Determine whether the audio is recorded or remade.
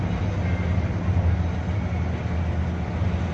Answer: recorded